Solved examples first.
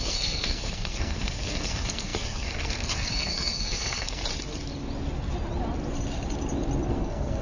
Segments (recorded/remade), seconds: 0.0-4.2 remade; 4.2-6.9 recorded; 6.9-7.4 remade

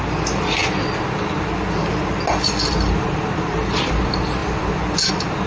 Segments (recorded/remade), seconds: 0.0-5.5 recorded

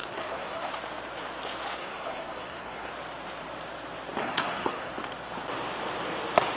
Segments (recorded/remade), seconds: 0.0-0.7 remade; 0.7-1.8 recorded; 1.8-2.9 remade; 2.9-4.2 recorded; 4.2-4.9 remade; 4.9-6.6 recorded

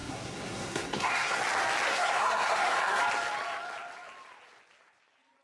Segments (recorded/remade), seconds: 0.0-1.4 remade; 1.4-1.9 recorded; 1.9-3.0 remade; 3.0-5.4 recorded

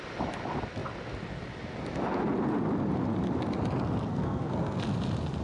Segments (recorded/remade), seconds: 0.0-4.1 recorded; 4.1-4.8 remade; 4.8-5.4 recorded

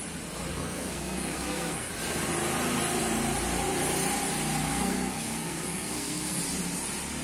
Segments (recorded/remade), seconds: 0.0-0.5 recorded; 0.5-1.9 remade; 1.9-4.7 recorded; 4.7-6.4 remade; 6.4-7.2 recorded